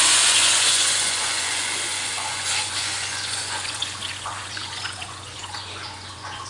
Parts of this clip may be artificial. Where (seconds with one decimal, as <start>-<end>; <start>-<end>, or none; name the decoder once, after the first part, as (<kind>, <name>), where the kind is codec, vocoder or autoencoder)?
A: 0.0-6.5 (vocoder, Vocos)